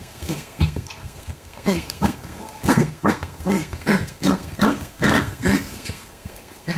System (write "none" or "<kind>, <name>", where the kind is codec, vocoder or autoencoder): codec, SNAC